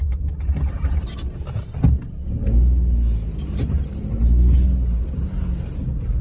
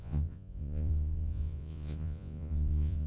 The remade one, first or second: second